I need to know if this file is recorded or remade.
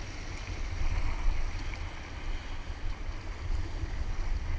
recorded